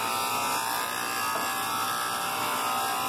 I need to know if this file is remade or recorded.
recorded